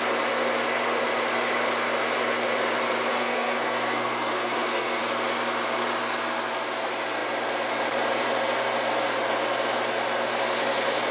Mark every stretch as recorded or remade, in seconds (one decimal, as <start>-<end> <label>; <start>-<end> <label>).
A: 0.0-3.1 recorded; 3.1-5.0 remade; 5.0-11.1 recorded